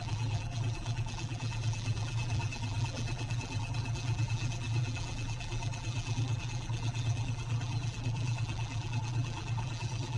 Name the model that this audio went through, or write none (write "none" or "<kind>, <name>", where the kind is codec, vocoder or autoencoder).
vocoder, BigVGAN v2